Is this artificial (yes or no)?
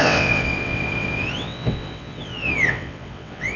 yes